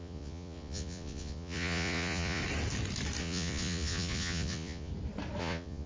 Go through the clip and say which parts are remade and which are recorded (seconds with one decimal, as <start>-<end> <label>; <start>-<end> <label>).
0.0-2.4 remade; 2.4-3.2 recorded; 3.2-4.9 remade; 4.9-5.4 recorded; 5.4-5.9 remade